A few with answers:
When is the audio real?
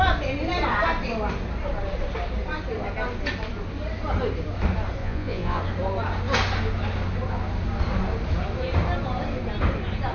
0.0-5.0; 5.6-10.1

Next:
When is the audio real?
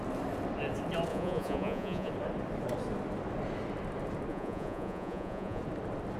0.0-1.1; 2.1-4.3; 5.6-6.2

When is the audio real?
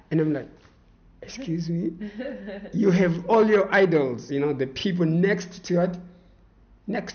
0.0-7.1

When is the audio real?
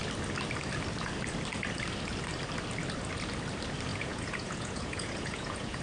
0.0-3.9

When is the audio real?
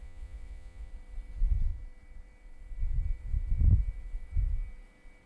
0.9-5.3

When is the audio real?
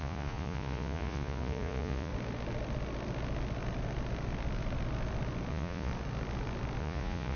2.1-5.5; 5.9-6.8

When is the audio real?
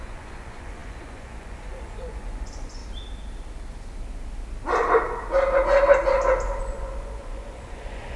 2.8-6.6